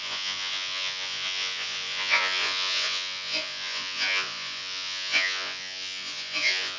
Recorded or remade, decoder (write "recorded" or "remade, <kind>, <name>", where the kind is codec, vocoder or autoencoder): remade, vocoder, Vocos